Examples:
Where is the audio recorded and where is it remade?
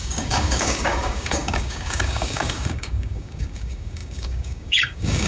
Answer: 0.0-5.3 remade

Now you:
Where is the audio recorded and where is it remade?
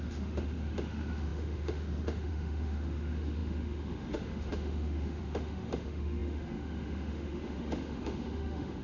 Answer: 0.0-8.8 remade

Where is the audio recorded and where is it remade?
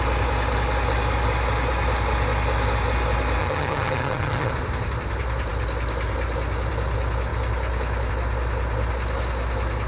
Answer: 0.0-3.4 recorded; 3.4-4.5 remade; 4.5-9.9 recorded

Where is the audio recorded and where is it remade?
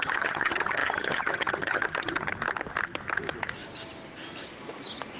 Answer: 0.0-2.3 remade; 2.3-5.2 recorded